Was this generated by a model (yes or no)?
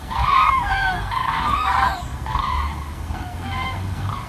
yes